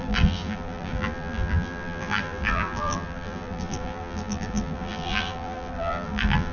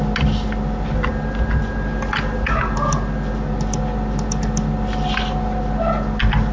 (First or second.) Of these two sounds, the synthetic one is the first